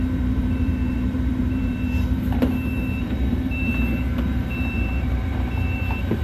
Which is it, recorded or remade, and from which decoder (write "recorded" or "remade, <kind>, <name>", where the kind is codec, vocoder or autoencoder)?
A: remade, vocoder, BigVGAN v2